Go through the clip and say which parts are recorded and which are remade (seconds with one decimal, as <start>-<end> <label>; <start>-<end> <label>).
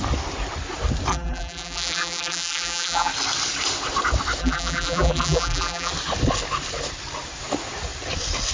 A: 0.0-1.1 recorded; 1.1-3.1 remade; 3.1-4.4 recorded; 4.4-5.9 remade; 5.9-8.5 recorded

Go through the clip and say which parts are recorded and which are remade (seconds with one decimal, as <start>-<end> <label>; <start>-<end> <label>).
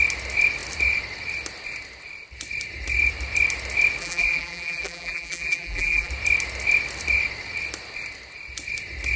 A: 0.0-4.0 recorded; 4.0-6.1 remade; 6.1-9.2 recorded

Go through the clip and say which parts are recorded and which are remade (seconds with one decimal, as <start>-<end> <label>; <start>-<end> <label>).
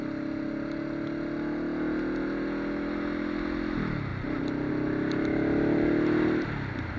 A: 0.0-4.1 recorded; 4.1-4.7 remade; 4.7-7.0 recorded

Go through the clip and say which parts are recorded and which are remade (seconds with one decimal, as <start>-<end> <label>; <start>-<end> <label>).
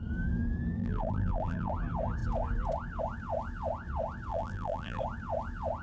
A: 0.0-0.8 recorded; 0.8-1.7 remade; 1.7-4.3 recorded; 4.3-5.0 remade; 5.0-5.8 recorded